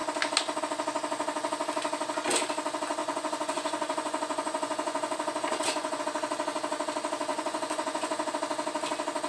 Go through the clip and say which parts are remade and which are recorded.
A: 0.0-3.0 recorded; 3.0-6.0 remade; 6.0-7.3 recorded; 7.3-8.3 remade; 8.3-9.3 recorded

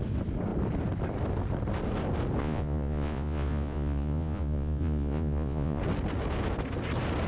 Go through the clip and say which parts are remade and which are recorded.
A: 0.0-2.4 recorded; 2.4-5.8 remade; 5.8-7.3 recorded

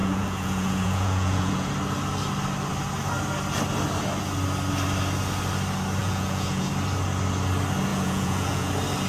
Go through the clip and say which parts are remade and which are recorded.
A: 0.0-1.7 remade; 1.7-6.0 recorded; 6.0-6.7 remade; 6.7-7.9 recorded; 7.9-8.7 remade; 8.7-9.1 recorded

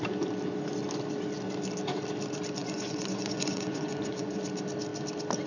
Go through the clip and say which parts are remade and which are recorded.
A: 0.0-2.6 recorded; 2.6-4.4 remade; 4.4-5.5 recorded

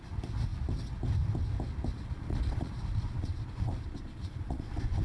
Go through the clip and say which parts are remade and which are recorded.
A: 0.0-1.9 recorded; 1.9-5.0 remade

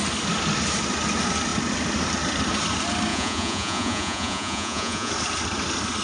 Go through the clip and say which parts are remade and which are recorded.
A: 0.0-3.1 recorded; 3.1-5.1 remade; 5.1-6.0 recorded

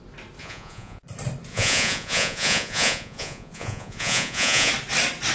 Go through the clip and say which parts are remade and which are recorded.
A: 0.0-0.4 recorded; 0.4-1.0 remade; 1.0-1.5 recorded; 1.5-4.7 remade; 4.7-5.3 recorded

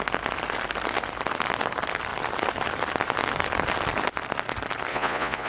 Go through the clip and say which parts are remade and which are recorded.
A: 0.0-4.9 recorded; 4.9-5.5 remade